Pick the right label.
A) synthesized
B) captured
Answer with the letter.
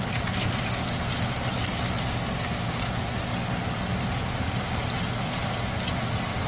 B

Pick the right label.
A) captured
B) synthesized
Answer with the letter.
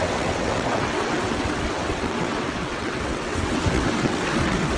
B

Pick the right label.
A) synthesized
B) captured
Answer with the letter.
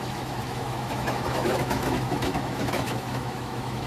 A